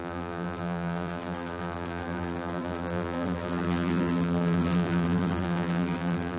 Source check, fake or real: fake